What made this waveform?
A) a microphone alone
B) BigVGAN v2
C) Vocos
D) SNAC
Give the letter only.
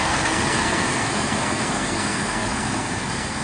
D